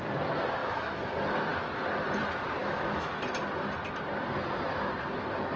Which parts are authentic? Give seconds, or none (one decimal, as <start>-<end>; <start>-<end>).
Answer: 0.0-0.6; 1.1-2.6; 3.1-5.6